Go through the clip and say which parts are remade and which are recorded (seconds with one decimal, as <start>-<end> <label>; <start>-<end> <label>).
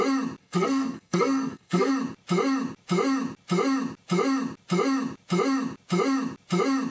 0.0-0.4 recorded; 0.4-1.9 remade; 1.9-6.9 recorded